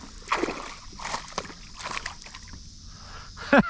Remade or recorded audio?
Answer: recorded